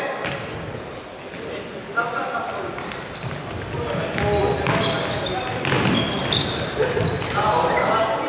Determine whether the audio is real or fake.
real